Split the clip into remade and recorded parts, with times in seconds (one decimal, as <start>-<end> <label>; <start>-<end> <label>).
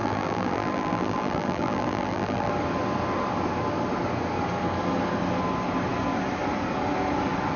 0.0-2.5 remade; 2.5-7.6 recorded